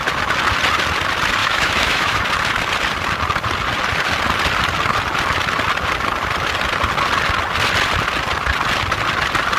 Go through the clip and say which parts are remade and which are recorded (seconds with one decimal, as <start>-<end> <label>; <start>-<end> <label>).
0.0-1.4 recorded; 1.4-2.2 remade; 2.2-9.6 recorded